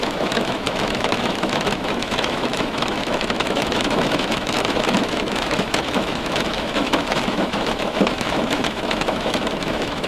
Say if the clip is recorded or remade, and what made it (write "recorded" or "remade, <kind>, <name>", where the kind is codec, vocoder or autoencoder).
remade, autoencoder, DAC-VAE